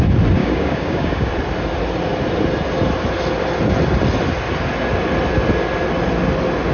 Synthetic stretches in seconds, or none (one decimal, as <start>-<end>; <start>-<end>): 0.4-1.3